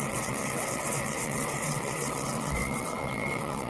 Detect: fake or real fake